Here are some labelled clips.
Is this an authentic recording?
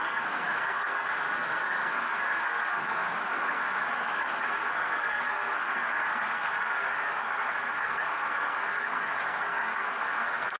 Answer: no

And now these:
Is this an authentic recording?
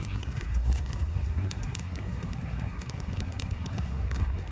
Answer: no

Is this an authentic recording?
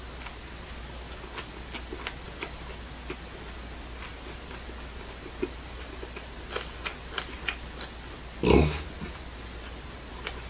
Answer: yes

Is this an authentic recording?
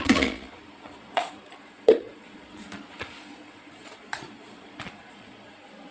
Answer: no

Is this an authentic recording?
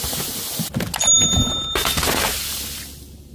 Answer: yes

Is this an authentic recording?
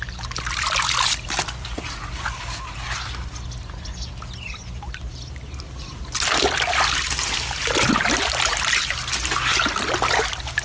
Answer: yes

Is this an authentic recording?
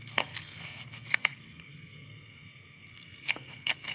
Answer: no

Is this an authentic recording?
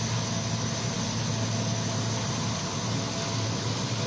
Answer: yes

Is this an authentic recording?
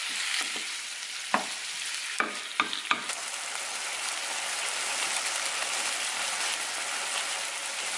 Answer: yes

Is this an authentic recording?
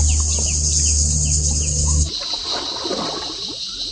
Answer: yes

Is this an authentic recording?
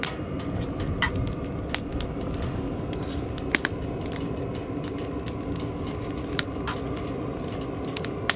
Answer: yes